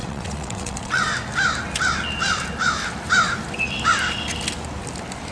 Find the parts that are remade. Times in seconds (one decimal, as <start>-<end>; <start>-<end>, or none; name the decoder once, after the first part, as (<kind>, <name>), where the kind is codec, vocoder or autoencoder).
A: 0.0-1.0 (vocoder, WaveNeXt)